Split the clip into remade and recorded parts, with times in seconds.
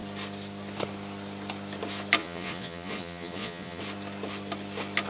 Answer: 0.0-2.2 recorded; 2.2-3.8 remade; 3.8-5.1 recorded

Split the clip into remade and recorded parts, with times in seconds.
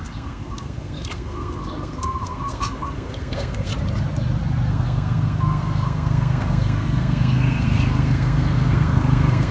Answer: 0.0-3.7 remade; 3.7-4.7 recorded; 4.7-9.5 remade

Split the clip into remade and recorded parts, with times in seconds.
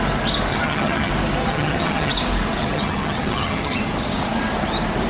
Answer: 0.0-0.5 recorded; 0.5-1.1 remade; 1.1-1.5 recorded; 1.5-2.1 remade; 2.1-2.6 recorded; 2.6-3.8 remade; 3.8-5.1 recorded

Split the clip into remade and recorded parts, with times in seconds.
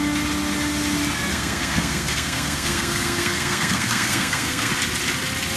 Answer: 0.0-1.3 recorded; 1.3-4.7 remade; 4.7-5.6 recorded